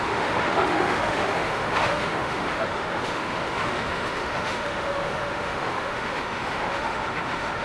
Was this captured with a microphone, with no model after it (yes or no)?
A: no